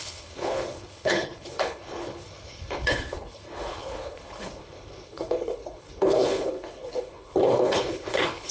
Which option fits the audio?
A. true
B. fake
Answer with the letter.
B